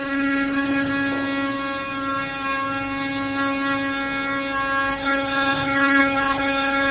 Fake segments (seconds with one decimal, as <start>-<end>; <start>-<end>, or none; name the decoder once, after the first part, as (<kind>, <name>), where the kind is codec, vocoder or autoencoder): 0.0-0.9 (codec, HILCodec); 4.9-6.9